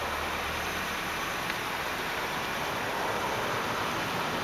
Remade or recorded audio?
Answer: recorded